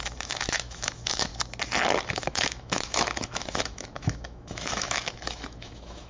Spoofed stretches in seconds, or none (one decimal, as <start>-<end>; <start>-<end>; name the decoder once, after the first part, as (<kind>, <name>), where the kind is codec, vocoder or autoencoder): 0.0-1.3 (autoencoder, DAC-VAE); 2.1-6.1

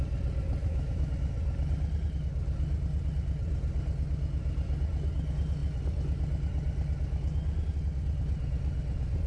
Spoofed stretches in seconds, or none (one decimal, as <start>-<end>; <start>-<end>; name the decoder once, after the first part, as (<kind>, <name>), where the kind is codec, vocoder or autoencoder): 0.6-1.1 (autoencoder, DAC-VAE)

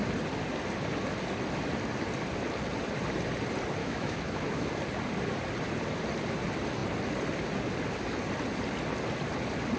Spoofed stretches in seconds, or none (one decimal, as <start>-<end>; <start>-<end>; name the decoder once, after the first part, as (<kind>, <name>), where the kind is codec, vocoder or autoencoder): 3.8-4.7 (autoencoder, DAC-VAE)

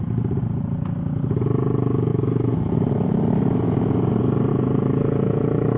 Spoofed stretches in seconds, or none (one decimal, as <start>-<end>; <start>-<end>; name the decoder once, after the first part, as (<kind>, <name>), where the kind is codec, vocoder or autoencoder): 2.1-2.7 (autoencoder, DAC-VAE); 4.5-5.8

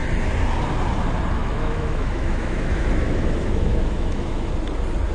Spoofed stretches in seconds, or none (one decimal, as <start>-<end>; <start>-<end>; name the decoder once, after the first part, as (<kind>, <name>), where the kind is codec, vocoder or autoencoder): 1.4-4.5 (autoencoder, DAC-VAE)

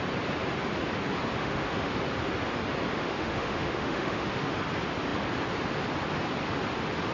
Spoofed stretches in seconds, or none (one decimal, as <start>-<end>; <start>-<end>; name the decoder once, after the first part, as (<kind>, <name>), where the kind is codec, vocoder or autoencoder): 1.4-1.9 (autoencoder, DAC-VAE); 2.9-4.5

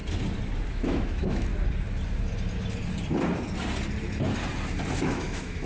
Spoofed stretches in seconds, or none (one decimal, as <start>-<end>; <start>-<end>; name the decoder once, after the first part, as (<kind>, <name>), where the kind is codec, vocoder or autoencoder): 0.7-1.5 (autoencoder, DAC-VAE); 4.9-5.7